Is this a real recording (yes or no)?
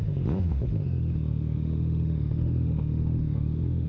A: no